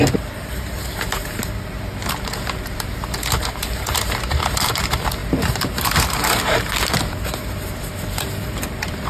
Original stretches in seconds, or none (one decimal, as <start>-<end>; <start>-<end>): none